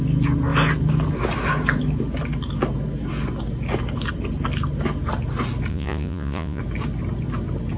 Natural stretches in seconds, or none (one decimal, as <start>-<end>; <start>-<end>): 0.0-5.7; 6.6-7.8